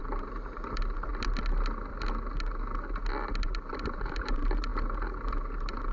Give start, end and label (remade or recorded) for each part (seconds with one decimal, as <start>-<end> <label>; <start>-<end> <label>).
0.0-1.1 remade; 1.1-3.7 recorded; 3.7-4.7 remade; 4.7-5.3 recorded; 5.3-5.9 remade